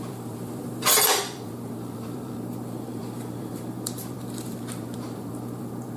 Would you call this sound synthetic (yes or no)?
yes